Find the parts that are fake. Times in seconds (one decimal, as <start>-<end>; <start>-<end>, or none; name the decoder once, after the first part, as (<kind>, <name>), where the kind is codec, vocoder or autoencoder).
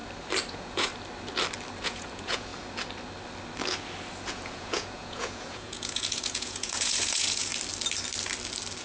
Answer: 0.5-0.9 (vocoder, Vocos); 1.8-2.5; 4.3-7.5